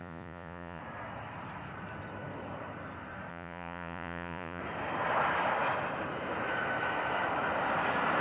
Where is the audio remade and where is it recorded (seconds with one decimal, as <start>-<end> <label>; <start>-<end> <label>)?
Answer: 0.0-0.8 remade; 0.8-3.3 recorded; 3.3-4.6 remade; 4.6-8.2 recorded